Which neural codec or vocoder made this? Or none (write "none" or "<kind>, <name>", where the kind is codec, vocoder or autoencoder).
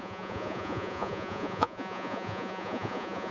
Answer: vocoder, Vocos